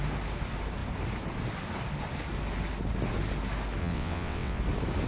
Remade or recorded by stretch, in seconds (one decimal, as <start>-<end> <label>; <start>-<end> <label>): 0.0-3.8 recorded; 3.8-4.6 remade; 4.6-5.1 recorded